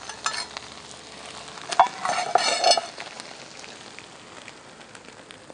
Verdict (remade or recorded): recorded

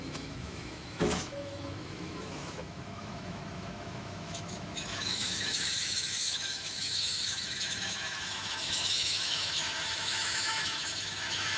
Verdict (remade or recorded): remade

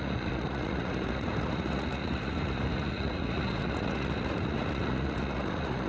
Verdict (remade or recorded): remade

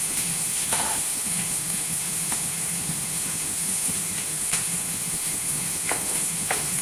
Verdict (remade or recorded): remade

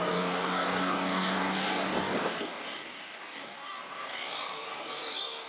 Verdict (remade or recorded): remade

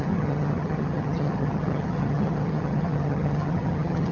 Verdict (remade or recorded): remade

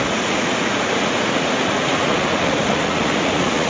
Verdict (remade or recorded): remade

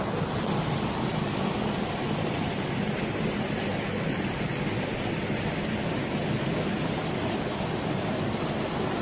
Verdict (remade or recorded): recorded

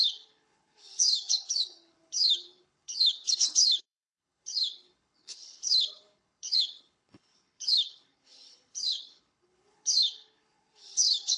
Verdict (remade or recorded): remade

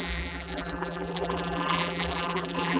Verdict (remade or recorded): remade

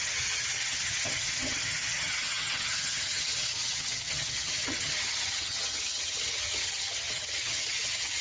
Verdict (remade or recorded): remade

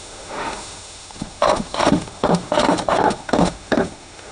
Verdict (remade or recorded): remade